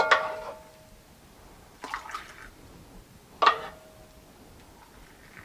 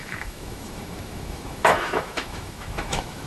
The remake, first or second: second